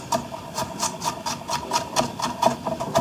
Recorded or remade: recorded